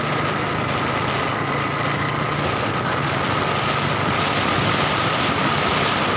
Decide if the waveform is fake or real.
real